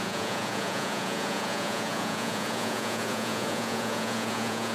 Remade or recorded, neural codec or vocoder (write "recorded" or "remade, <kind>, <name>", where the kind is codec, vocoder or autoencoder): remade, vocoder, Vocos